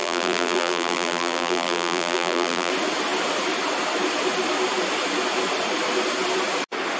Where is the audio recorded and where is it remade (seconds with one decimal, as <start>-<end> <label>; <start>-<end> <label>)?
0.0-2.7 remade; 2.7-7.0 recorded